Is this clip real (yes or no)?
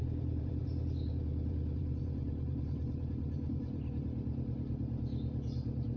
no